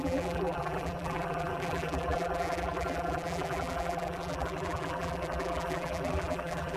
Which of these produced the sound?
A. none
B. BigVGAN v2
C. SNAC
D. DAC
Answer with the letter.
B